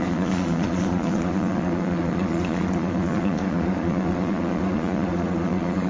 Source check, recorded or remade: remade